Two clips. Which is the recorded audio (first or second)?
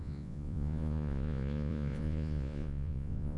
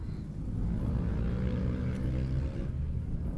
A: second